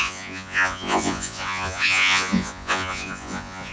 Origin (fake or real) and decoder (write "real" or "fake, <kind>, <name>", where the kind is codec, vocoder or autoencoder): fake, vocoder, Vocos